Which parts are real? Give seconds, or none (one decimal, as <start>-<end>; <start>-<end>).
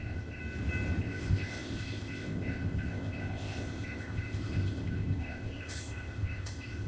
0.4-1.0